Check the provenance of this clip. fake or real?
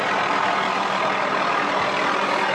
fake